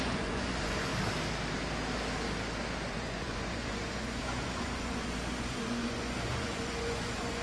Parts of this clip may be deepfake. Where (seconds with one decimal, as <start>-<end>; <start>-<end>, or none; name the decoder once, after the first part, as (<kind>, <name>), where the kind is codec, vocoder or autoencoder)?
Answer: 0.0-0.9 (vocoder, Vocos); 2.9-7.4

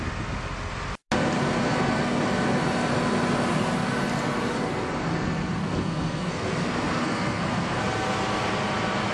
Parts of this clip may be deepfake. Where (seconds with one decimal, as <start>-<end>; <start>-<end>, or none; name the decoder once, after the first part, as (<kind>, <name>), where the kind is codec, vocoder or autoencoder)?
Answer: 1.6-2.2 (codec, SNAC); 5.6-7.8

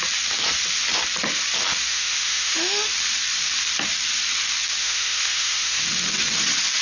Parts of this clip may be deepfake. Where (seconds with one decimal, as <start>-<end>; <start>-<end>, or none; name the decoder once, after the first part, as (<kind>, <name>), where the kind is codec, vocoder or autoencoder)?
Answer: 1.9-2.9 (autoencoder, DAC-VAE); 4.8-5.8

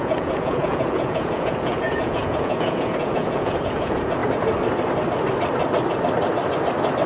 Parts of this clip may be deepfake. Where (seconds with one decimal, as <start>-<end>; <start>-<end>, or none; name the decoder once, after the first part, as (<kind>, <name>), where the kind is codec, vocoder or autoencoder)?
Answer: 0.0-4.2 (vocoder, Vocos)

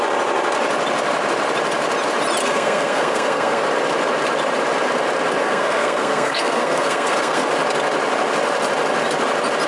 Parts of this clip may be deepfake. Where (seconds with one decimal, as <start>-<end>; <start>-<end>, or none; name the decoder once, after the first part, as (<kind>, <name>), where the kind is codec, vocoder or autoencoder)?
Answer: 2.4-3.6 (codec, SNAC); 5.4-7.4

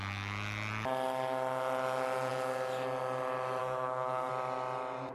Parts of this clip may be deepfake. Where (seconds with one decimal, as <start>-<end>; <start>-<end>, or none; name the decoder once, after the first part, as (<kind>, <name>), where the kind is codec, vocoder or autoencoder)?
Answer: 3.6-4.3 (codec, SNAC)